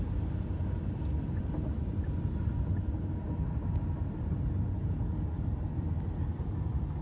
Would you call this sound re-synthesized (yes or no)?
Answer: no